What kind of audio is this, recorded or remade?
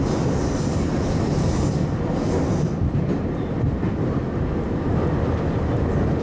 recorded